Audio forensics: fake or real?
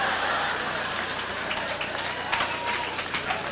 real